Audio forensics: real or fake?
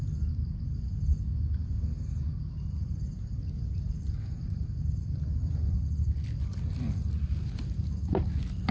real